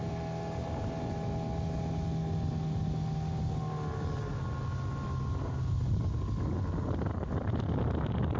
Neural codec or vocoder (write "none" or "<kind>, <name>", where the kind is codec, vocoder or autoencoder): none